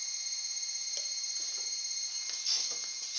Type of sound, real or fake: real